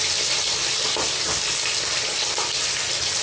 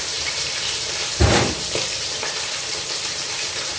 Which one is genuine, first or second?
first